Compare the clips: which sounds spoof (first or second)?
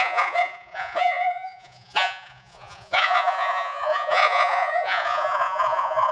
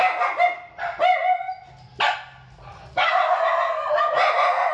first